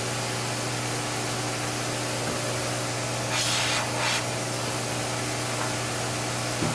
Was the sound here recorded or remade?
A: recorded